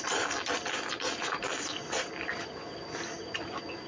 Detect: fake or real real